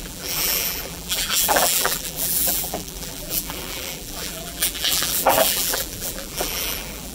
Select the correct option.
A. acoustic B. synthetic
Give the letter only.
B